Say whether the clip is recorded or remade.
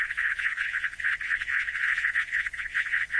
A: remade